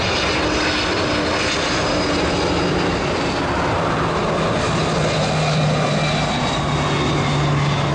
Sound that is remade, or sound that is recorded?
recorded